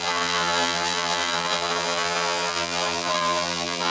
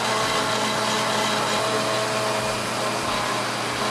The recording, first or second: second